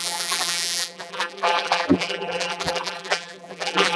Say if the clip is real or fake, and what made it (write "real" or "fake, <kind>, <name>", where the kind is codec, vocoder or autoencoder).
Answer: fake, vocoder, BigVGAN v2